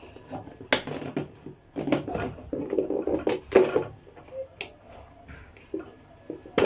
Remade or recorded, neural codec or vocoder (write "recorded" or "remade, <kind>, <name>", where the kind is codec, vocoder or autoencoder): recorded